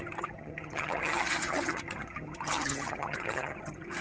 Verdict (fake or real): fake